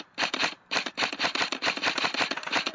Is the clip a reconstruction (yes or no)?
yes